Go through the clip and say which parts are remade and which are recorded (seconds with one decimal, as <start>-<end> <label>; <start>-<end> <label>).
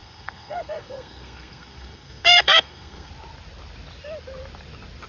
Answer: 0.0-3.1 remade; 3.1-5.1 recorded